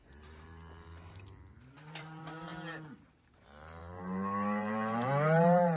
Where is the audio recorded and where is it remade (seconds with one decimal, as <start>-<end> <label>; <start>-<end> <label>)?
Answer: 0.0-2.5 remade; 2.5-3.4 recorded; 3.4-5.8 remade